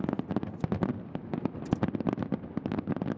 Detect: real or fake real